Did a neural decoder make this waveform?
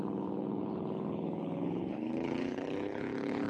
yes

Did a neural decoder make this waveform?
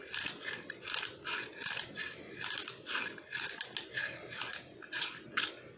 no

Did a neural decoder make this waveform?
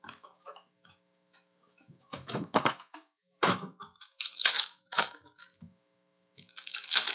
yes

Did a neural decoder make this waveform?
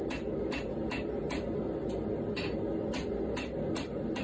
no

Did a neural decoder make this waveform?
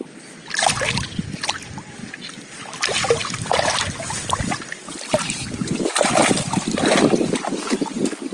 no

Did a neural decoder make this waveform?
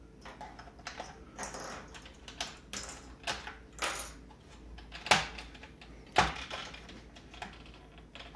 no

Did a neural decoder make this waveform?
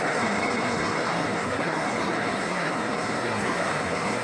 yes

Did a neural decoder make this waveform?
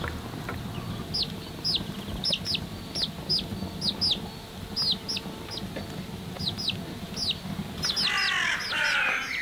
no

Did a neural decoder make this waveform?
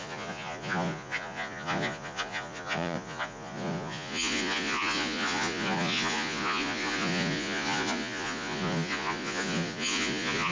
yes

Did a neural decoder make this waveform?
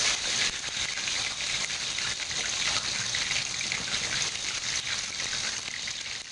no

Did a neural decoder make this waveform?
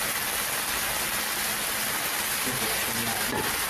no